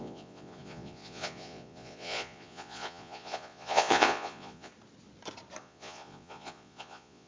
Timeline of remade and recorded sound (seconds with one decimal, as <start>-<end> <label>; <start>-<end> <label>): 0.0-4.7 remade; 4.7-5.6 recorded; 5.6-7.3 remade